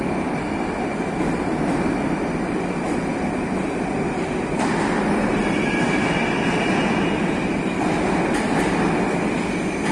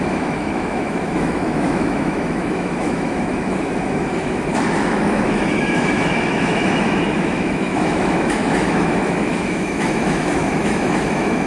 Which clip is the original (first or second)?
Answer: first